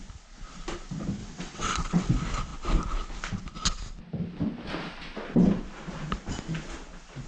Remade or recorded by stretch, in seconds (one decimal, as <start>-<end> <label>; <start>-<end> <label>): 0.0-1.2 recorded; 1.2-2.1 remade; 2.1-7.3 recorded